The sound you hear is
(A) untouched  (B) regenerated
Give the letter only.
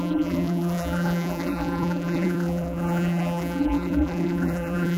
B